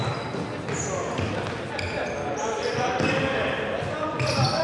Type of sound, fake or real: real